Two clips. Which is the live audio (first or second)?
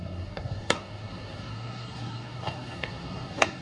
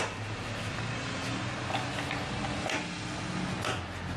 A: second